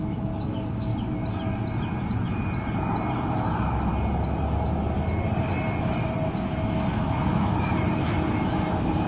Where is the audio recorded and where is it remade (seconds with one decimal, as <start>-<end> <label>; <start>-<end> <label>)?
0.0-0.9 remade; 0.9-3.3 recorded; 3.3-3.9 remade; 3.9-6.9 recorded; 6.9-9.1 remade